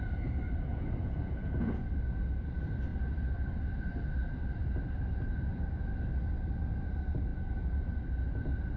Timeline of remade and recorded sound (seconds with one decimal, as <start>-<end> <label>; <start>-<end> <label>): 0.0-0.7 recorded; 0.7-1.9 remade; 1.9-8.8 recorded